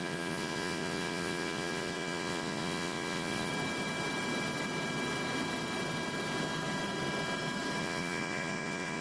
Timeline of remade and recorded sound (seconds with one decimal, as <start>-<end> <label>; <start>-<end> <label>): 0.0-3.5 remade; 3.5-7.8 recorded; 7.8-9.0 remade